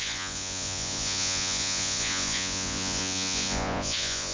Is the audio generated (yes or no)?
yes